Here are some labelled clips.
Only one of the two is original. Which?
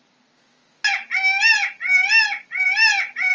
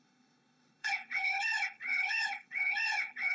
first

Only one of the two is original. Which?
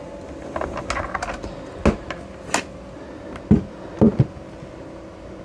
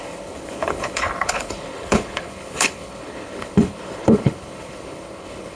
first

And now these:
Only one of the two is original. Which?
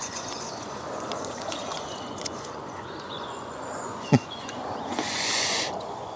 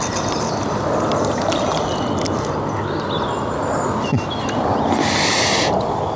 second